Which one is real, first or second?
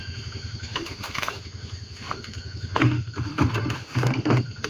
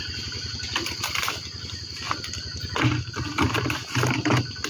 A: second